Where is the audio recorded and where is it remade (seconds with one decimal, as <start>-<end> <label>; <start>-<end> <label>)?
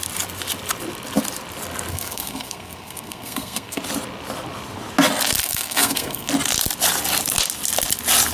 0.0-1.9 recorded; 1.9-3.8 remade; 3.8-5.4 recorded; 5.4-6.3 remade; 6.3-8.3 recorded